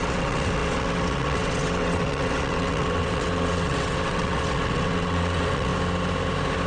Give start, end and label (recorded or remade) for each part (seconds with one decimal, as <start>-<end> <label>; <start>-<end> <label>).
0.0-5.7 remade; 5.7-6.7 recorded